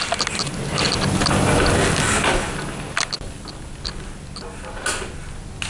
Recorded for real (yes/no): yes